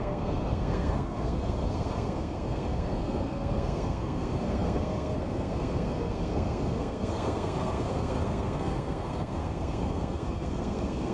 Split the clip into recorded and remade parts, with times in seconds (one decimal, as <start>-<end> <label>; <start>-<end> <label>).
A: 0.0-11.1 remade